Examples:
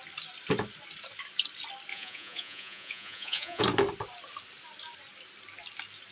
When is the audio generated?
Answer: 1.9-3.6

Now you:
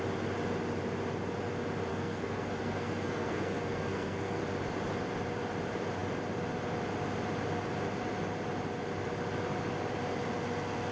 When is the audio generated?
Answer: 1.9-4.4

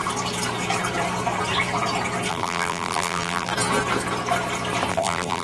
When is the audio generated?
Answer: 2.3-3.5; 4.9-5.4